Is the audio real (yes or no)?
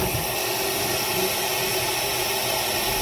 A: yes